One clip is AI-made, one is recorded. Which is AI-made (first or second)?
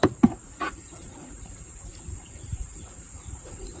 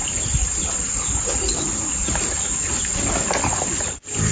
first